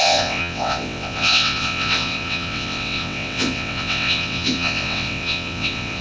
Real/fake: fake